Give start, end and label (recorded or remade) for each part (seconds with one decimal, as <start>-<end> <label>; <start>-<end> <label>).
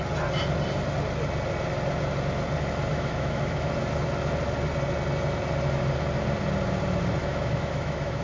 0.0-2.9 recorded; 2.9-3.7 remade; 3.7-7.2 recorded; 7.2-8.2 remade